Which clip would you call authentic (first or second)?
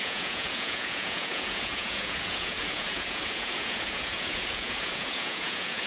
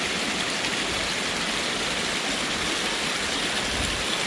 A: second